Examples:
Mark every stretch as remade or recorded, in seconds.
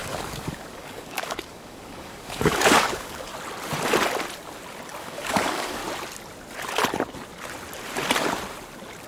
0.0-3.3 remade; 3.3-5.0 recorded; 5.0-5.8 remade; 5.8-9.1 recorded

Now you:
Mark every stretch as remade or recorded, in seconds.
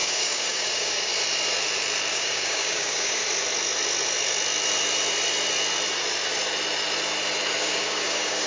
0.0-1.1 remade; 1.1-2.1 recorded; 2.1-3.2 remade; 3.2-7.6 recorded; 7.6-8.5 remade